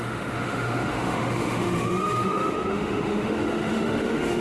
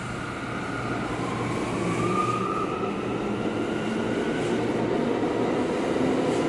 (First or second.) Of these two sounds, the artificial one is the first